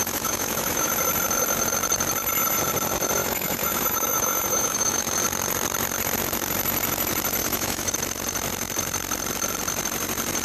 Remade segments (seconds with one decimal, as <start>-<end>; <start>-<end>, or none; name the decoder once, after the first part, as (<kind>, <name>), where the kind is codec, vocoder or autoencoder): 0.0-0.9 (autoencoder, DAC-VAE); 3.2-5.1; 7.4-7.9